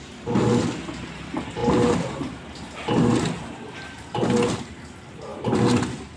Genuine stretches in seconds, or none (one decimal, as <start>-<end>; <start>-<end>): 0.0-1.6; 3.1-5.3; 5.8-6.2